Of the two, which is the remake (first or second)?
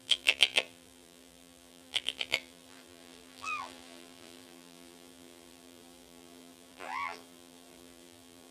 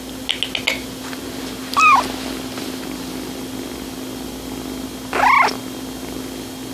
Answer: first